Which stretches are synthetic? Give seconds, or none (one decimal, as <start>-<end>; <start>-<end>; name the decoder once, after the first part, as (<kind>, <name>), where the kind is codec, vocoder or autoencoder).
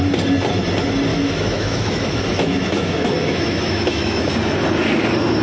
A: 1.1-4.3 (autoencoder, DAC-VAE)